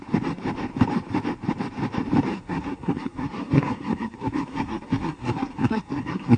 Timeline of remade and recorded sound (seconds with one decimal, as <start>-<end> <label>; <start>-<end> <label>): 0.0-2.3 recorded; 2.3-6.4 remade